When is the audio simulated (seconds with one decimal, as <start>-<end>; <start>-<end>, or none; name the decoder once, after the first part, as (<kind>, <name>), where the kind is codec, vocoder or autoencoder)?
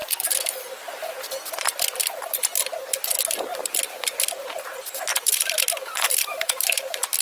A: 3.5-4.0 (vocoder, BigVGAN v2); 5.1-6.8